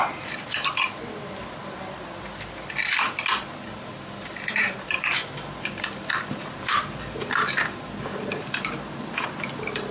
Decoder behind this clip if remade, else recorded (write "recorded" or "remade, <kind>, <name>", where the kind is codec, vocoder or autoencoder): remade, vocoder, BigVGAN v2